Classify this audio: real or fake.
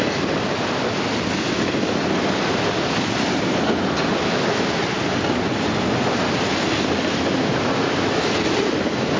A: real